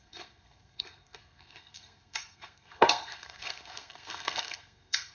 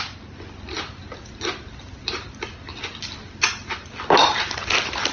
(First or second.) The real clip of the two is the second